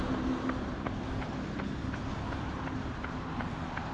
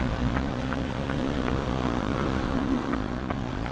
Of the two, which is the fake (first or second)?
second